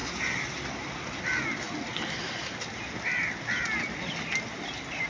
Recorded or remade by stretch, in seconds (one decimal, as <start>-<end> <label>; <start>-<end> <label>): 0.0-5.1 recorded